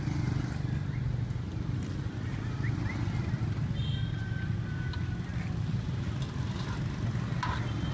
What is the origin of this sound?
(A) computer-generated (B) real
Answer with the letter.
B